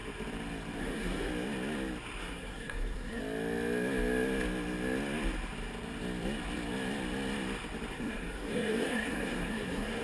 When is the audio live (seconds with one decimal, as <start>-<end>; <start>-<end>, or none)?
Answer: 0.0-0.8; 1.3-2.2; 3.2-7.9